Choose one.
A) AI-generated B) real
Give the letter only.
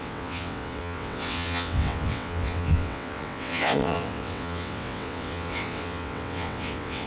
A